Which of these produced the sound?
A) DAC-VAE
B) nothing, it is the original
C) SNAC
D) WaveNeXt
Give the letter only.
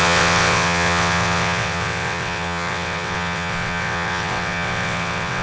D